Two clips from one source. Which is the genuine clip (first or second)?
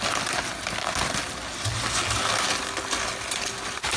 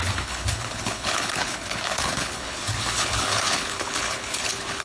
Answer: first